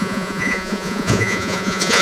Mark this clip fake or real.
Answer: fake